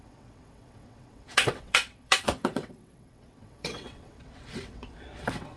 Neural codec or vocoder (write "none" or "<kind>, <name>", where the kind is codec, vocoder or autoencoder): vocoder, WaveNeXt